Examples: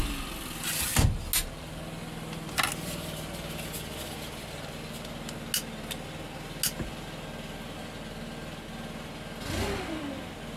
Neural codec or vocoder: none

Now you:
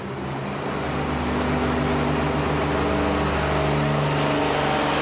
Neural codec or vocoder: none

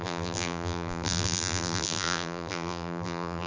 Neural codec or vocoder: vocoder, BigVGAN v2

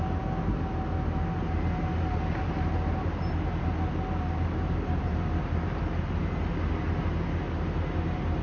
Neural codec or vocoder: none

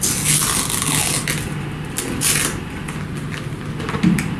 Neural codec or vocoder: none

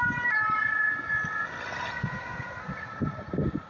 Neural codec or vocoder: none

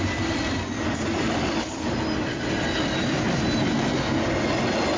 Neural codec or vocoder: none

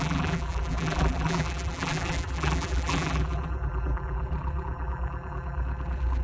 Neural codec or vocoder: vocoder, BigVGAN v2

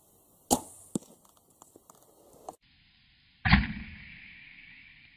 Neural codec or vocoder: none